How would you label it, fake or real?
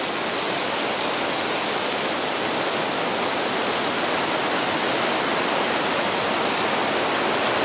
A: real